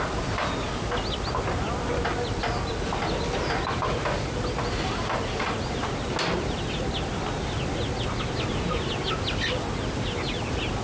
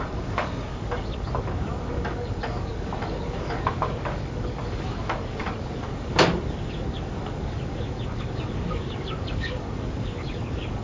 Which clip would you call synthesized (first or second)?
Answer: second